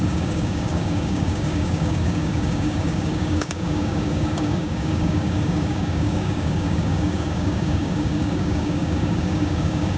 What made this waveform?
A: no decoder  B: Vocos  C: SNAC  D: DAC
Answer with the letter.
D